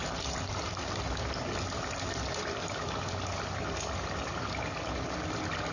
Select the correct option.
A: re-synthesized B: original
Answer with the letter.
B